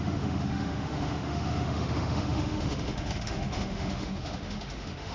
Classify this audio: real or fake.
fake